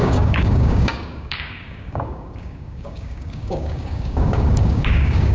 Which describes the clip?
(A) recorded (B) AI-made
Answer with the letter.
B